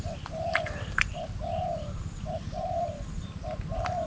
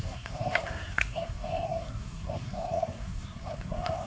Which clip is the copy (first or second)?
second